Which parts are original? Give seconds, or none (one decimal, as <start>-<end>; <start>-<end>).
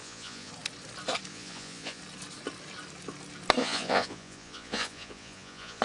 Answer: 0.5-1.3; 2.0-3.6